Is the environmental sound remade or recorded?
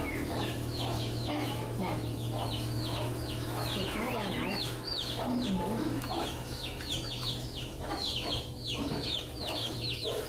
remade